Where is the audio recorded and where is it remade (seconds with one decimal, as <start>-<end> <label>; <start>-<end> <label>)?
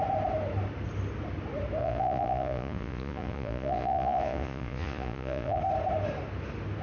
0.0-1.8 recorded; 1.8-5.6 remade; 5.6-6.8 recorded